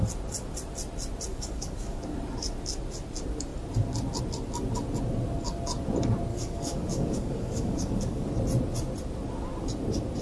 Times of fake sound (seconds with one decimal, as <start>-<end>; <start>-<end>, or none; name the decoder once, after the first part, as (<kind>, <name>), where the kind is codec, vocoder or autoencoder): 1.3-2.0 (codec, DAC); 6.3-8.3